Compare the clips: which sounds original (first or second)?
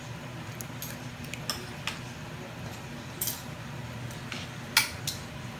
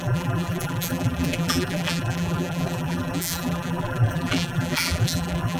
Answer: first